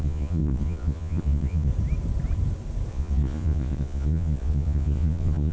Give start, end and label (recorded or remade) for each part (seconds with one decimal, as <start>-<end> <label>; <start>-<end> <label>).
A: 0.0-1.7 remade; 1.7-2.9 recorded; 2.9-5.5 remade